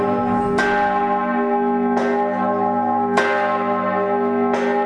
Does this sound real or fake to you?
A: real